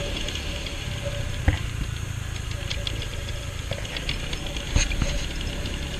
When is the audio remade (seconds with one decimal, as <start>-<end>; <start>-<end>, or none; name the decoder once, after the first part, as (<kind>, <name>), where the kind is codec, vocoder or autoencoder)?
0.0-2.7 (vocoder, BigVGAN v2); 3.1-3.9